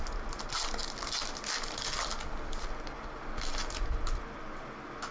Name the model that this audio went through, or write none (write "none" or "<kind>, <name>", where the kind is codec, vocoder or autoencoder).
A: none